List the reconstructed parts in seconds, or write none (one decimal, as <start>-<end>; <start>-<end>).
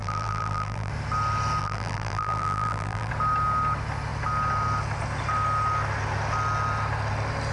0.0-0.9; 1.6-3.1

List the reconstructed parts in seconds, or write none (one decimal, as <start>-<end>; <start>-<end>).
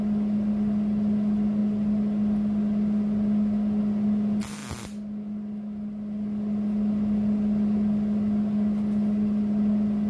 none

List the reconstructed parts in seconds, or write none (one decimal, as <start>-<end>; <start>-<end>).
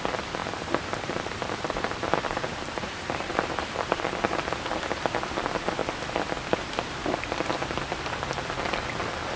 0.4-4.0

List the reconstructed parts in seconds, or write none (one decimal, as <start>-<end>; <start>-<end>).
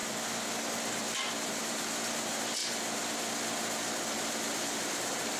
1.3-2.6; 4.0-5.4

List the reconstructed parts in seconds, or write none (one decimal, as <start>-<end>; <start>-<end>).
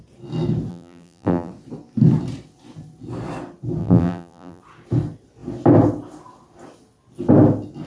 0.7-1.5; 3.8-4.6